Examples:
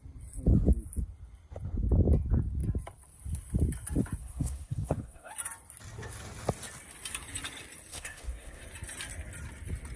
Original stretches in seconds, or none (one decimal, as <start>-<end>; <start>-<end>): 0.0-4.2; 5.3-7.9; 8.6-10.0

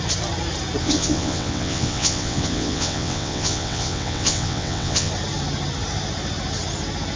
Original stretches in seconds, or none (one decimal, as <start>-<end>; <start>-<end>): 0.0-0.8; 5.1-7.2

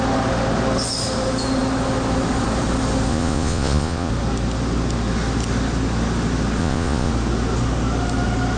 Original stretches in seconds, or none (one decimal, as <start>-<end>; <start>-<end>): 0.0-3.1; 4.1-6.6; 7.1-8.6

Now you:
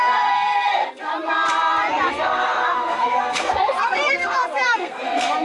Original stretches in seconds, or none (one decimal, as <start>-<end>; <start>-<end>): 1.1-2.1